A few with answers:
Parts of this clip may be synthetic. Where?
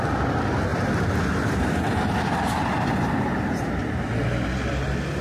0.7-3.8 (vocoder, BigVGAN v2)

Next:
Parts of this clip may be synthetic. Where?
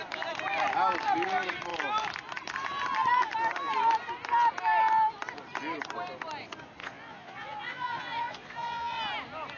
6.8-9.0 (vocoder, Vocos)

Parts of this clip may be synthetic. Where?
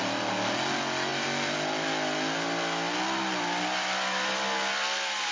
none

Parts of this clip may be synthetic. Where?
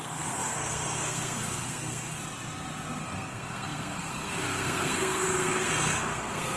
0.0-2.2 (codec, SNAC); 3.0-6.6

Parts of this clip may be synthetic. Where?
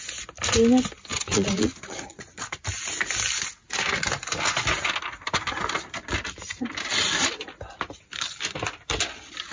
1.1-2.4 (vocoder, Vocos)